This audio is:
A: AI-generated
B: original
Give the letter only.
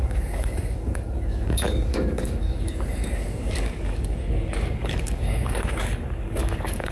A